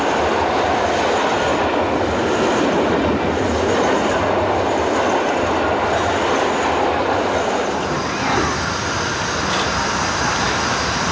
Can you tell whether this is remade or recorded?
recorded